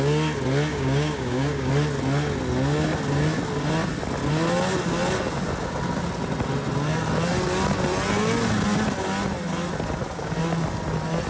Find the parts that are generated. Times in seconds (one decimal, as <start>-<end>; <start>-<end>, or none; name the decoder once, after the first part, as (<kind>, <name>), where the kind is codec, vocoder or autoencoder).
0.7-1.7 (codec, DAC)